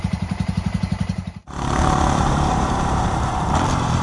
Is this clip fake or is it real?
fake